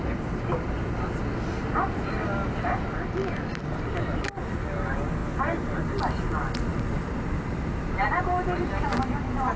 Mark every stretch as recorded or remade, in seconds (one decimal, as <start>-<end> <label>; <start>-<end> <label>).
0.0-6.7 recorded; 6.7-8.8 remade; 8.8-9.6 recorded